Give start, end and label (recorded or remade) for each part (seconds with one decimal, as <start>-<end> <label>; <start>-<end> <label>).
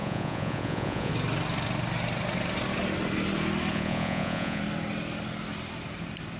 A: 0.0-1.1 remade; 1.1-3.7 recorded; 3.7-4.6 remade; 4.6-6.4 recorded